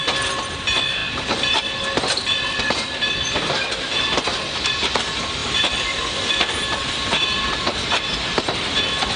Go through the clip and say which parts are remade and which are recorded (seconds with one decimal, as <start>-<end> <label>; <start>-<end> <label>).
0.0-9.2 recorded